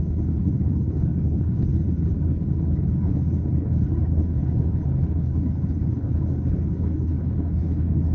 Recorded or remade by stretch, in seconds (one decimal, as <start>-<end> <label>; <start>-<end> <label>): 0.0-8.1 remade